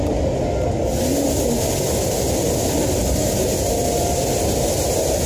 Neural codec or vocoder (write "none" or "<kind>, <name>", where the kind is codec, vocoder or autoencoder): none